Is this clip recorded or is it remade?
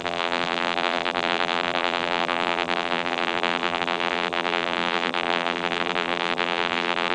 remade